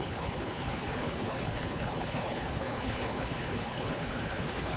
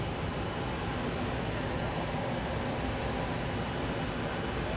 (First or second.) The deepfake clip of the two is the first